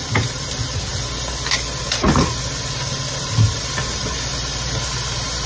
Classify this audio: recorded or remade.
recorded